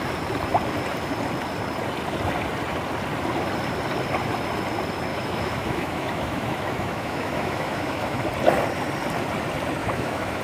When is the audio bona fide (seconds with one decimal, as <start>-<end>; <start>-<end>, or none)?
0.0-5.1; 8.2-9.8